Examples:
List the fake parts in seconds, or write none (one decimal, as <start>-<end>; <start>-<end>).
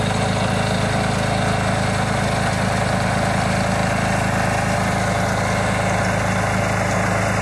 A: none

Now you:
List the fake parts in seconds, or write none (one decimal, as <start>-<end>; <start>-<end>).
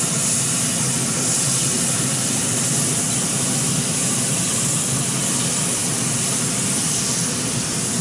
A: none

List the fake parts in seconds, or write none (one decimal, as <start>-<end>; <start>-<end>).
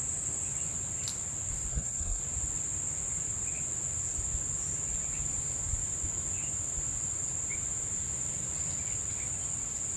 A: 1.7-2.2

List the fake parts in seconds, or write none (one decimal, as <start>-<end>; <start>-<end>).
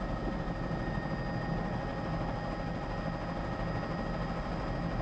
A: none